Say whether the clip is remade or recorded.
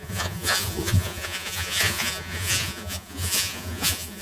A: remade